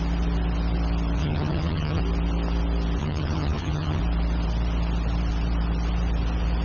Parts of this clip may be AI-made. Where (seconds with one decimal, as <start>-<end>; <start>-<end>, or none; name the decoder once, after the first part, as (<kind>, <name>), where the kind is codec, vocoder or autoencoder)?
1.2-2.0 (vocoder, HiFi-GAN); 3.0-4.0